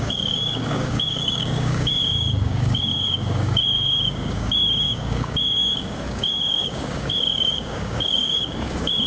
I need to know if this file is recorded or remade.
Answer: remade